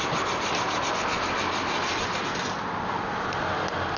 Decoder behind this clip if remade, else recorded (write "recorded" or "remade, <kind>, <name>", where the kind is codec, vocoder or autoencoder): recorded